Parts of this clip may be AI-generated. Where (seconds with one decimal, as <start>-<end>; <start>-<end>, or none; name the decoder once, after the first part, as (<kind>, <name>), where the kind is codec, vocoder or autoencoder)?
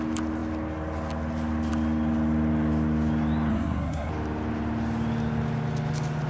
3.5-4.1 (codec, SNAC)